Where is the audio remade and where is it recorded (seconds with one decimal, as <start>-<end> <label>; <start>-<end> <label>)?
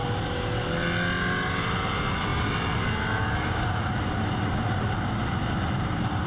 0.0-6.3 recorded